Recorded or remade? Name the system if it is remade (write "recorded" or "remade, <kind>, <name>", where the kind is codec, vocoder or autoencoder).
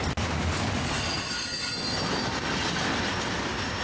recorded